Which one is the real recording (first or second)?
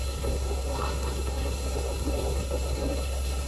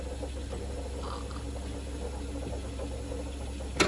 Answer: second